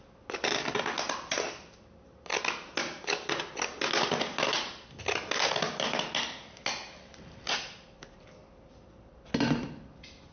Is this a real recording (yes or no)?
yes